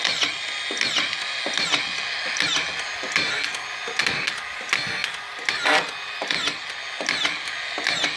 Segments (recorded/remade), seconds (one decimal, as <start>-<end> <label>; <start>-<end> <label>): 0.0-8.2 recorded